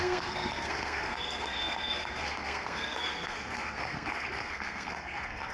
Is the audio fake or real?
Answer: fake